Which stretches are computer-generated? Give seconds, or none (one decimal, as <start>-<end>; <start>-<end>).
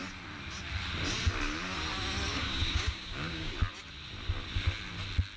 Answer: 2.3-3.5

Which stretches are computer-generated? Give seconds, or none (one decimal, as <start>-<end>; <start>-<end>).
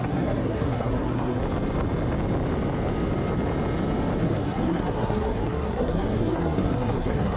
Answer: 0.0-1.4; 4.2-7.4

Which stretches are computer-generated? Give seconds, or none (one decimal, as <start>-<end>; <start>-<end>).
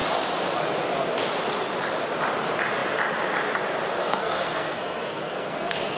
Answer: 4.0-6.0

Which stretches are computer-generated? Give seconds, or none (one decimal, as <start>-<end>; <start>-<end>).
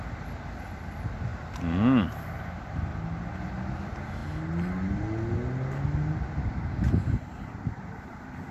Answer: none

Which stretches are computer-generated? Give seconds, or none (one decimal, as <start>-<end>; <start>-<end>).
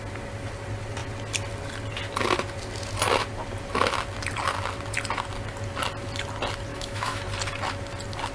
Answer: 6.7-7.2